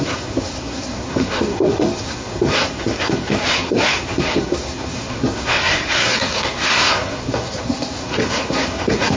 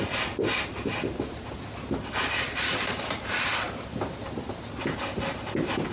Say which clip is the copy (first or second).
first